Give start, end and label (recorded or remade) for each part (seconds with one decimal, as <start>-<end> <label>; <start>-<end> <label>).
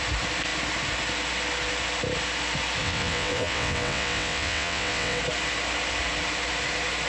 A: 0.0-2.8 recorded; 2.8-5.2 remade; 5.2-7.1 recorded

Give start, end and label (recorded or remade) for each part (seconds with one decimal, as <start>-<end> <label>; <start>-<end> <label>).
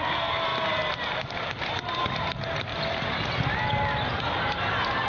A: 0.0-5.1 recorded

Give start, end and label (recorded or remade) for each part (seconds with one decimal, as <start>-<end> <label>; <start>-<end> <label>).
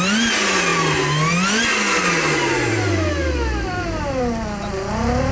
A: 0.0-5.3 recorded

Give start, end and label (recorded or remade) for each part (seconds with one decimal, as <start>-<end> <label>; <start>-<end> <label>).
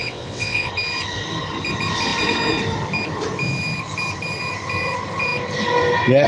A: 0.0-0.7 remade; 0.7-6.3 recorded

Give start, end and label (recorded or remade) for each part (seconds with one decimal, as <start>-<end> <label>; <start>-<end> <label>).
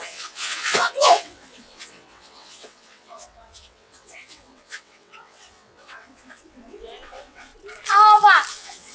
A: 0.0-7.5 remade; 7.5-8.5 recorded; 8.5-8.9 remade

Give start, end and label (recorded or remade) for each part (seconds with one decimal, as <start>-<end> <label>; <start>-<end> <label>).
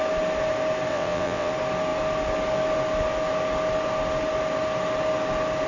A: 0.0-0.9 recorded; 0.9-1.5 remade; 1.5-5.7 recorded